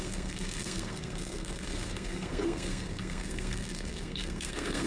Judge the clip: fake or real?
fake